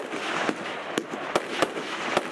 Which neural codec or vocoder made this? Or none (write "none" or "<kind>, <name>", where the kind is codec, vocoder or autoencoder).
none